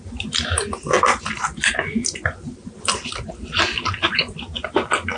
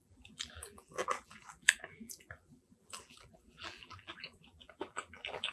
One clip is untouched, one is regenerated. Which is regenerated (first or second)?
second